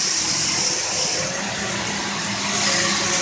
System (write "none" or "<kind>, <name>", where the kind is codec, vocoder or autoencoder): none